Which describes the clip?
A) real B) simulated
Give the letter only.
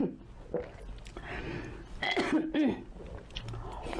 A